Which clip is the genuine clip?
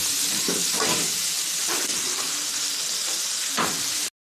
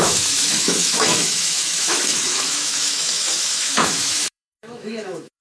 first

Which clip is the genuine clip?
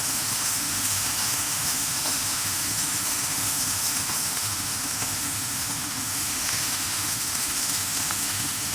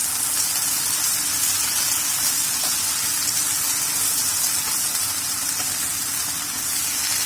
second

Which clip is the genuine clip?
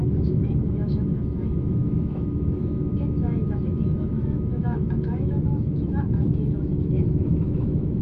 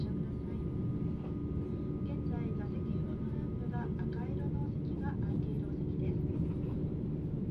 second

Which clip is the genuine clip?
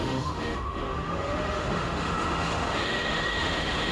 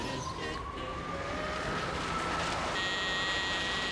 second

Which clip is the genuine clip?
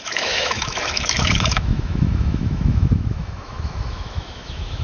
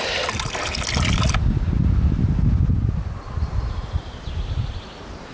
second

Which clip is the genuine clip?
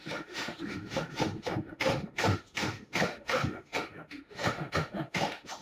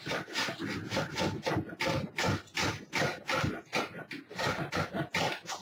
second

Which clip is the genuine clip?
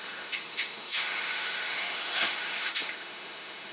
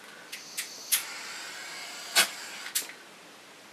second